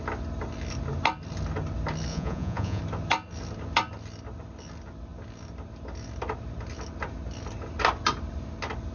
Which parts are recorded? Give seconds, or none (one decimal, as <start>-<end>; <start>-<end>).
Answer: 0.0-2.1; 2.8-8.9